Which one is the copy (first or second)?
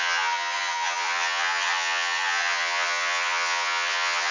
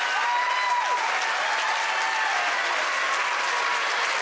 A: first